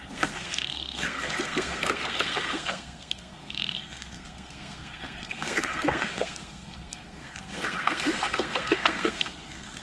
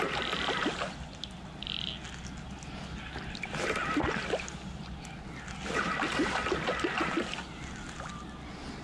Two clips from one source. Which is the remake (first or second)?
first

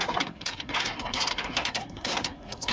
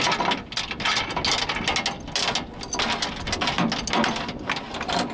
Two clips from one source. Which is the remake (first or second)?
first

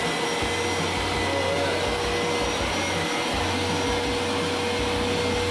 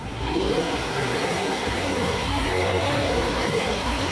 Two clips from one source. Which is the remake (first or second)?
second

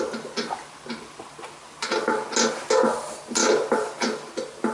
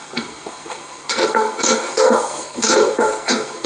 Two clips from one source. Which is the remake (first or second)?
second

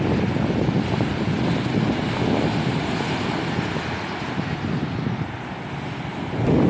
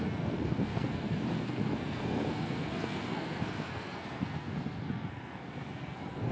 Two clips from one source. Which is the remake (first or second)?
second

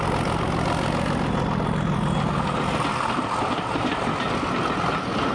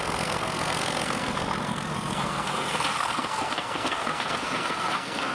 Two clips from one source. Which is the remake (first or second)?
second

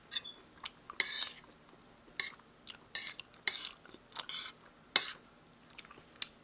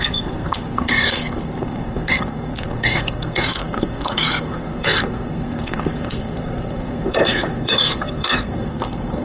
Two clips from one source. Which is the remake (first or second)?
second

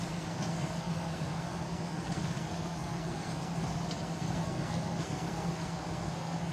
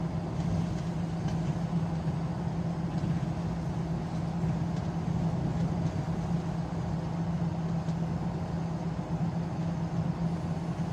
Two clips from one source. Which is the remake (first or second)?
first